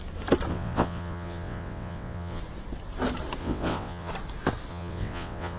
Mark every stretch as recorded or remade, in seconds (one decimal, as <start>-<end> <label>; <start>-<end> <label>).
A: 0.0-0.5 recorded; 0.5-2.4 remade; 2.4-3.4 recorded; 3.4-4.1 remade; 4.1-4.7 recorded; 4.7-5.6 remade

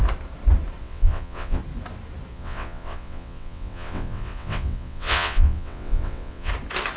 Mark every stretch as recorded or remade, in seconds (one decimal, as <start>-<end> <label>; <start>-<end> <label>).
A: 0.0-0.8 recorded; 0.8-1.6 remade; 1.6-2.3 recorded; 2.3-6.5 remade; 6.5-7.0 recorded

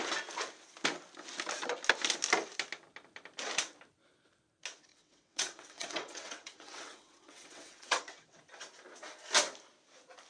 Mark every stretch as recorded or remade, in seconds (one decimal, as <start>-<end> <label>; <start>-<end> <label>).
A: 0.0-4.9 recorded; 4.9-8.4 remade; 8.4-10.3 recorded

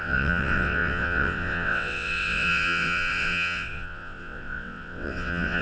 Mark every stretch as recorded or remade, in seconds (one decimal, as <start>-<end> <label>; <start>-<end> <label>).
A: 0.0-5.6 remade

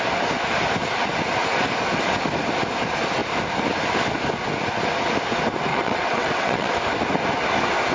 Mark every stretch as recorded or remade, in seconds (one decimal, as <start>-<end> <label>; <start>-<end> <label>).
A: 0.0-5.7 recorded; 5.7-6.7 remade; 6.7-7.9 recorded

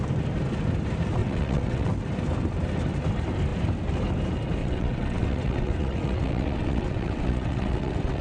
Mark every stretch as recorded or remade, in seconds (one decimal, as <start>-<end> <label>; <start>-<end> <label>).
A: 0.0-1.2 recorded; 1.2-1.9 remade; 1.9-4.6 recorded; 4.6-8.2 remade

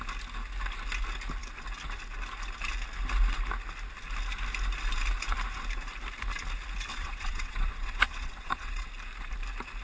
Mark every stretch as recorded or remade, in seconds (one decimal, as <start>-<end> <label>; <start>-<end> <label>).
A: 0.0-6.9 recorded; 6.9-8.9 remade; 8.9-9.8 recorded